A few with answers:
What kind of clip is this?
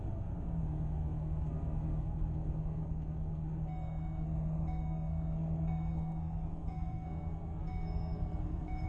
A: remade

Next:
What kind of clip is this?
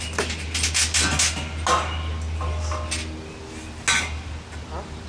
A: recorded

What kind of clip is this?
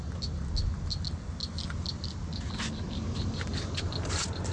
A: recorded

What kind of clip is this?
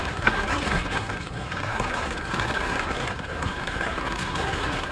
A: remade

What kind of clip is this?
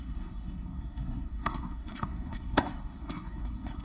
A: remade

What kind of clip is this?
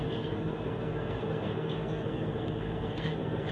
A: remade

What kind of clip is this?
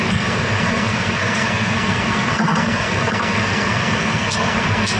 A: remade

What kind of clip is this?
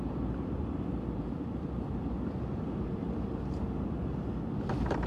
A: recorded